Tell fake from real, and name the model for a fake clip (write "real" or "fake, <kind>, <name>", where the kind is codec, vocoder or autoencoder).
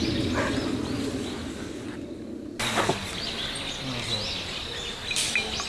real